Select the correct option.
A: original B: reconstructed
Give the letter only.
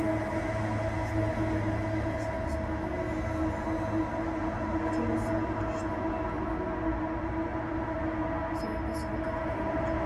A